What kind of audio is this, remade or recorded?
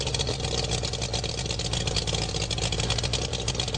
recorded